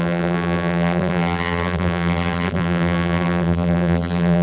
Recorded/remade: remade